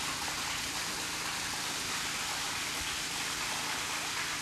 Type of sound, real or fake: real